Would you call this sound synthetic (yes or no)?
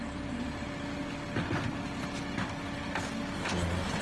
no